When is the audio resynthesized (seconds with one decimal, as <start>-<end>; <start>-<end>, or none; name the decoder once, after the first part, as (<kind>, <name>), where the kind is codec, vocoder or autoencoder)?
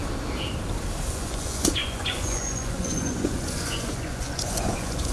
1.1-5.1 (vocoder, Vocos)